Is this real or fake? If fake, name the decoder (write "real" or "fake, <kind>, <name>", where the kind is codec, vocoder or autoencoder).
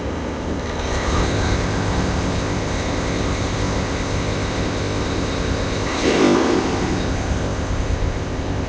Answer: fake, codec, ZipCodec